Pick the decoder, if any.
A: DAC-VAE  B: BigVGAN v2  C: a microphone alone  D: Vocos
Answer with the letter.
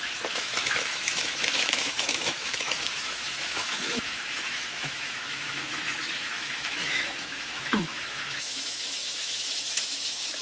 A